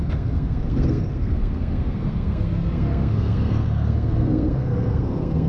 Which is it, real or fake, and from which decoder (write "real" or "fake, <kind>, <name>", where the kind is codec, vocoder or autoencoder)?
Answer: fake, codec, SNAC